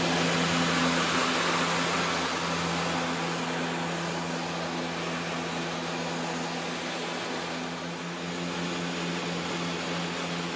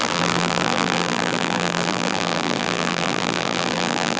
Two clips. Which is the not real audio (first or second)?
second